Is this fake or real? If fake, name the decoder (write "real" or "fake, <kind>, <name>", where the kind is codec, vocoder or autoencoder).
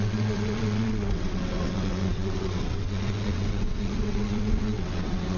fake, vocoder, WaveNeXt